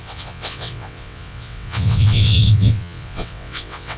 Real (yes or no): no